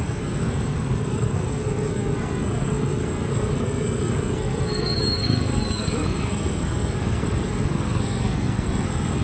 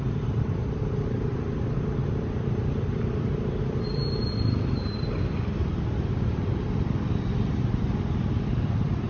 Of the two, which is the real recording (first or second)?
second